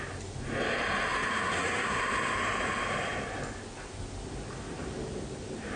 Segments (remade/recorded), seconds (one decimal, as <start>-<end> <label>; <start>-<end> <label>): 0.0-1.3 recorded; 1.3-2.0 remade; 2.0-5.8 recorded